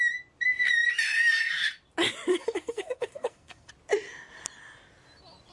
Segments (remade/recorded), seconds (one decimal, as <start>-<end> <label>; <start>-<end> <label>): 0.0-2.3 recorded; 2.3-3.7 remade; 3.7-5.5 recorded